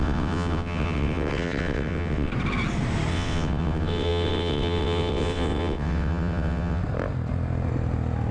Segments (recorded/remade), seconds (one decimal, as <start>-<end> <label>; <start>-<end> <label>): 0.0-2.3 remade; 2.3-3.1 recorded; 3.1-6.8 remade; 6.8-8.3 recorded